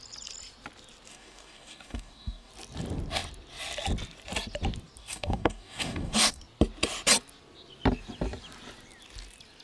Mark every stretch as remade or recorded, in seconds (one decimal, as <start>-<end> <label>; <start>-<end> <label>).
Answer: 0.0-1.1 recorded; 1.1-2.5 remade; 2.5-5.0 recorded; 5.0-6.4 remade; 6.4-9.6 recorded